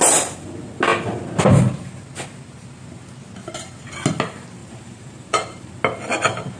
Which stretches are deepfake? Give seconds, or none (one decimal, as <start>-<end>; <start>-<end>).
4.6-5.7